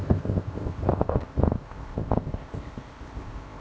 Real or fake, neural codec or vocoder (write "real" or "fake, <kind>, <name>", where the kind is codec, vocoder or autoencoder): fake, codec, ZipCodec